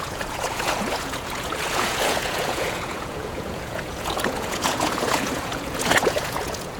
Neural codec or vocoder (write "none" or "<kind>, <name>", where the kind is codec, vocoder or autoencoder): vocoder, Vocos